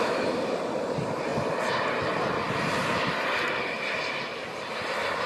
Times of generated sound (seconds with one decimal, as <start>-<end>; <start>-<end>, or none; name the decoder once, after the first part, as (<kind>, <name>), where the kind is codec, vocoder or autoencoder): 0.0-1.3 (vocoder, BigVGAN v2); 4.5-5.3